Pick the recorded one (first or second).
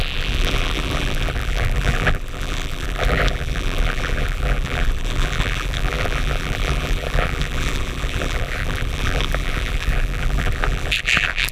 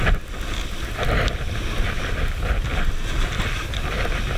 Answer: second